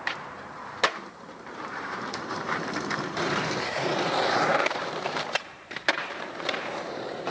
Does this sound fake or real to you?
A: fake